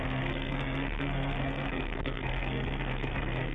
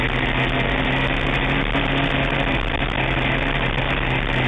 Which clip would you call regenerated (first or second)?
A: first